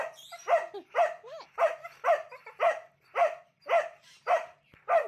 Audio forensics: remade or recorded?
recorded